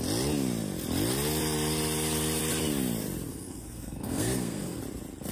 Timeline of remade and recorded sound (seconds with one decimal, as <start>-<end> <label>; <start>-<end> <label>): 0.0-3.3 recorded; 3.3-4.8 remade; 4.8-5.3 recorded